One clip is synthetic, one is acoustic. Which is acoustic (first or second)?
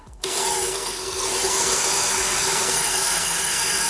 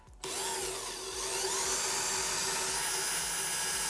second